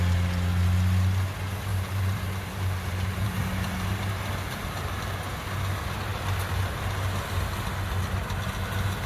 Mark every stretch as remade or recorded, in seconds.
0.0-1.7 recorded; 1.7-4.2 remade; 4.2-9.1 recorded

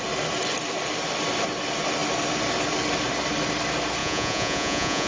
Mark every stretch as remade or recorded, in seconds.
0.0-4.0 recorded; 4.0-5.1 remade

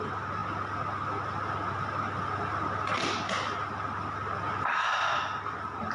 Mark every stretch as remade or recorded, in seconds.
0.0-5.9 recorded